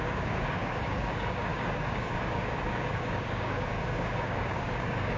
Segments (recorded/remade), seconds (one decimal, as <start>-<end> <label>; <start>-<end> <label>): 0.0-5.2 remade